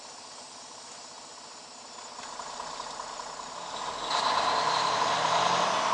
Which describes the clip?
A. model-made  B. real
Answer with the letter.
B